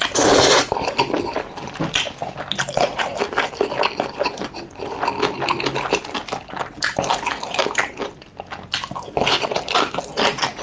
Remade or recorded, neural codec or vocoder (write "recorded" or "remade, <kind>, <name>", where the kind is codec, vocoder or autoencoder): recorded